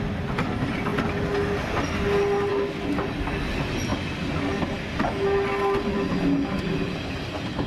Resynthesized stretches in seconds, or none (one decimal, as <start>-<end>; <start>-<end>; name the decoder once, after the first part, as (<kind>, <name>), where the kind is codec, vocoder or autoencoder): none